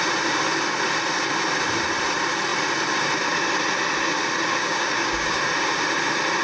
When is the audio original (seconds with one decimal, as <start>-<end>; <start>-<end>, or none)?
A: 0.0-4.6; 5.4-6.4

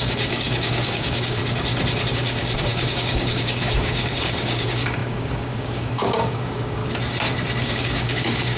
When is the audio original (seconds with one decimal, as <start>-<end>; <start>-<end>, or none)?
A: 1.4-2.1; 6.8-7.6

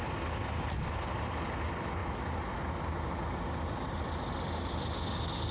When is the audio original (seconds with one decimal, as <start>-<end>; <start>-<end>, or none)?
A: 0.0-5.5

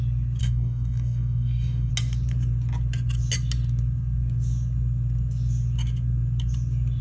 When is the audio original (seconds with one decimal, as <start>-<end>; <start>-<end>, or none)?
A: 0.0-0.4; 1.9-7.0